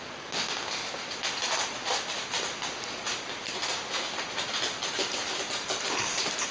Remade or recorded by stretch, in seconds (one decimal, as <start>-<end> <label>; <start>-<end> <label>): 0.0-6.5 recorded